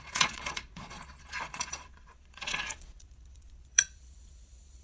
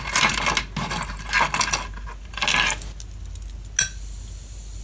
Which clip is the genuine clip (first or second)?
second